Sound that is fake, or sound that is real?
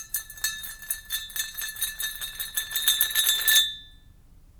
real